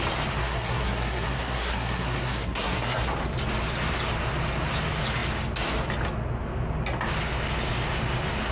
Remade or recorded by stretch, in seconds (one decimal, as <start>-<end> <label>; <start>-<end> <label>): 0.0-0.4 recorded; 0.4-3.1 remade; 3.1-8.5 recorded